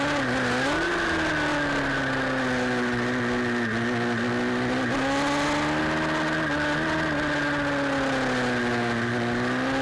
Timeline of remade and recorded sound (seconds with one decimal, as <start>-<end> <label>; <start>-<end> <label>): 0.0-9.8 recorded